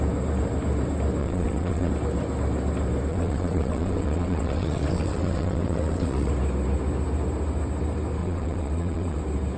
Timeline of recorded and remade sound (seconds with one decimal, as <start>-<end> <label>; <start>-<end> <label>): 0.0-1.2 recorded; 1.2-1.9 remade; 1.9-3.1 recorded; 3.1-6.3 remade; 6.3-8.2 recorded; 8.2-9.2 remade; 9.2-9.6 recorded